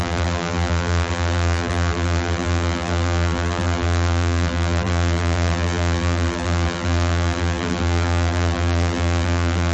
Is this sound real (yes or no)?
no